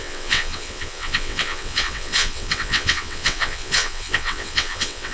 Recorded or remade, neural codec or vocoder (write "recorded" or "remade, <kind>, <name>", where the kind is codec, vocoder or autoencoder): remade, vocoder, WaveNeXt